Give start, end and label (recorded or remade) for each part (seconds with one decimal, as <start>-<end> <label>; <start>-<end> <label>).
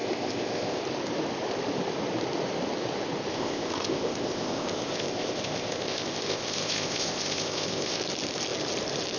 0.0-0.8 remade; 0.8-3.3 recorded; 3.3-8.0 remade; 8.0-9.2 recorded